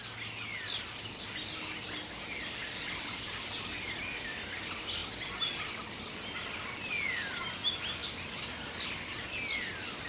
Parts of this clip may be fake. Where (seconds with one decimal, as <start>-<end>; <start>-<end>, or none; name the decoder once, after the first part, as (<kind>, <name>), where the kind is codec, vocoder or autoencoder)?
none